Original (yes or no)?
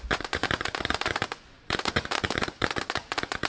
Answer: no